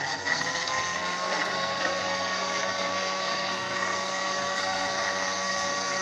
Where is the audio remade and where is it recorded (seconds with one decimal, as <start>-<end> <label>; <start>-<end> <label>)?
0.0-6.0 remade